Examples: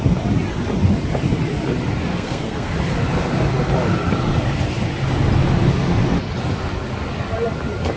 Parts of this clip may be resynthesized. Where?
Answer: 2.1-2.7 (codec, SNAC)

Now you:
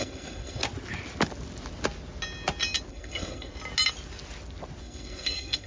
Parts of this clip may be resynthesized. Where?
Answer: 0.0-0.6 (codec, SNAC); 2.9-3.5; 4.8-5.7